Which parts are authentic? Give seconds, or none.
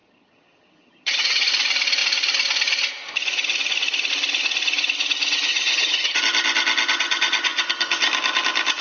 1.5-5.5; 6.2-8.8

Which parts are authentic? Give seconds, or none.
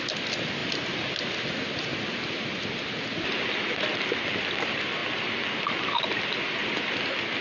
0.0-0.6; 1.3-6.6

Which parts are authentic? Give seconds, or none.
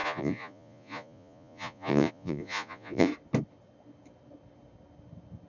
3.1-5.5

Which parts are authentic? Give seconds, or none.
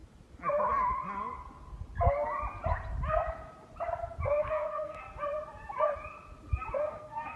0.0-4.4; 5.0-6.8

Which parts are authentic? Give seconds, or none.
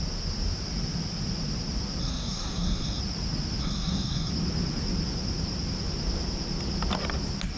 0.0-2.0; 3.0-3.6; 4.3-7.6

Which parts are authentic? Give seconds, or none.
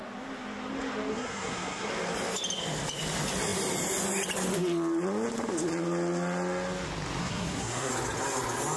0.0-1.1; 1.9-7.2; 7.9-8.8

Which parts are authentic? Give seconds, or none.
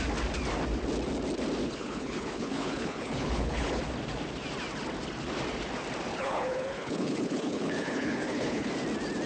0.0-1.6; 3.8-6.1; 8.7-9.3